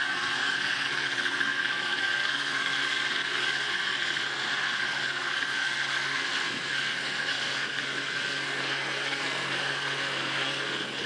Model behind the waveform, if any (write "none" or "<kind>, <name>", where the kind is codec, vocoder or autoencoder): codec, SNAC